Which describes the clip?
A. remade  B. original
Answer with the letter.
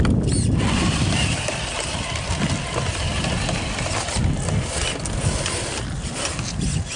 B